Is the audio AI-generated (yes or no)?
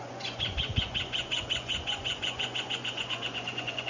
yes